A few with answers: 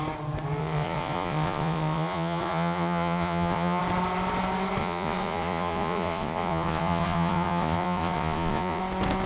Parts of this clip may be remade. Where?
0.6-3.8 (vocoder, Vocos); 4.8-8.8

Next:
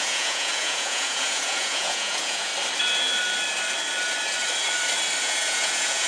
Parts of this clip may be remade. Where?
0.0-2.5 (vocoder, Vocos); 5.2-6.1

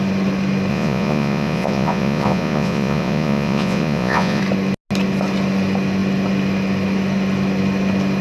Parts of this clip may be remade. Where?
0.7-4.4 (vocoder, Vocos)

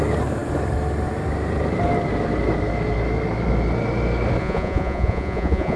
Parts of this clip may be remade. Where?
4.4-5.8 (vocoder, Vocos)

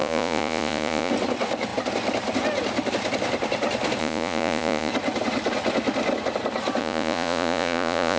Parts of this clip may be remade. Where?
0.0-1.1 (vocoder, Vocos); 4.0-4.9; 6.8-8.2

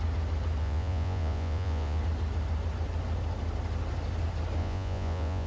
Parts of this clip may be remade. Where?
0.6-2.0 (vocoder, Vocos); 4.6-5.5

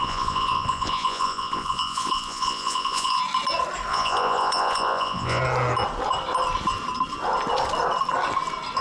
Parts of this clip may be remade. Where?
0.0-3.2 (vocoder, Vocos); 3.9-5.4